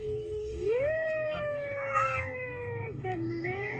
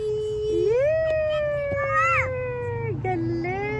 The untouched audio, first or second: second